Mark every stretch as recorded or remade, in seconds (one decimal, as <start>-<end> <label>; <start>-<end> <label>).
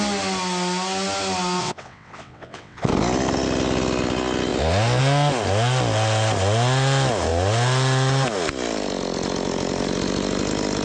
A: 0.0-1.6 recorded; 1.6-2.9 remade; 2.9-10.8 recorded